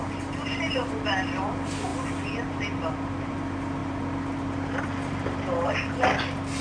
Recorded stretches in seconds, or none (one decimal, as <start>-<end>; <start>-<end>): 0.0-6.6